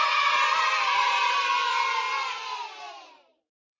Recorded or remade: remade